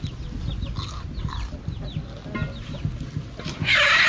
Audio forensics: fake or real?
real